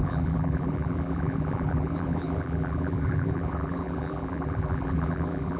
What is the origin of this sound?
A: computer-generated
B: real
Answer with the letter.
A